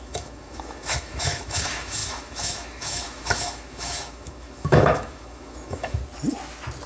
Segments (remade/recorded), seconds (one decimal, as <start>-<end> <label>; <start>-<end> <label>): 0.0-6.0 remade; 6.0-6.9 recorded